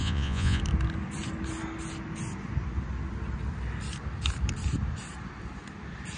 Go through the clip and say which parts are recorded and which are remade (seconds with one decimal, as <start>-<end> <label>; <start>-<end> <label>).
0.0-0.6 remade; 0.6-6.2 recorded